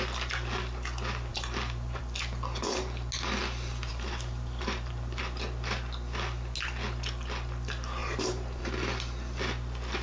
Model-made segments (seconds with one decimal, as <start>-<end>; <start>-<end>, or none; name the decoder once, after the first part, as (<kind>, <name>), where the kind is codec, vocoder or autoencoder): 1.3-2.0 (vocoder, BigVGAN v2); 3.9-5.2; 8.0-8.6